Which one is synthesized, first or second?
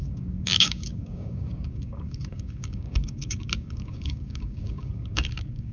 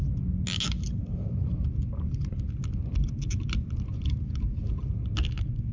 first